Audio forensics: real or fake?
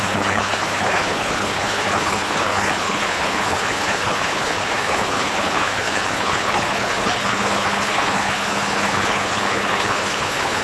fake